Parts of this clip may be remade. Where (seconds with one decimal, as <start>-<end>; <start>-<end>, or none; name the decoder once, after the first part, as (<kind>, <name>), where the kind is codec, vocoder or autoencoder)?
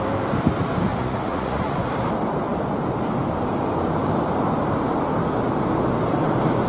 0.9-1.8 (vocoder, Vocos)